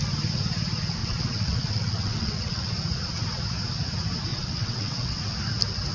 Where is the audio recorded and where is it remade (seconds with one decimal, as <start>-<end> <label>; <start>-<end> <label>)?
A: 0.0-1.0 recorded; 1.0-2.7 remade; 2.7-4.3 recorded; 4.3-5.2 remade; 5.2-5.9 recorded